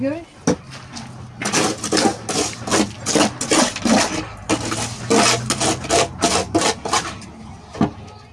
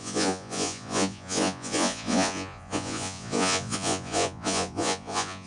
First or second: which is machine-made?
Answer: second